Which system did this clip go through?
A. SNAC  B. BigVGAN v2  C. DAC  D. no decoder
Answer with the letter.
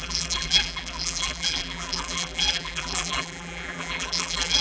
B